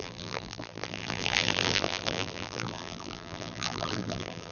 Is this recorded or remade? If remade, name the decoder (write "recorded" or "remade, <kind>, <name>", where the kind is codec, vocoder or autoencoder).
remade, vocoder, BigVGAN v2